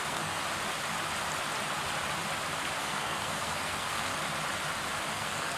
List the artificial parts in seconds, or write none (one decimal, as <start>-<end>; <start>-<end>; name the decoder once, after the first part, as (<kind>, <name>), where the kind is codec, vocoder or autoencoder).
0.0-0.4 (codec, SNAC); 2.8-4.1; 5.1-5.6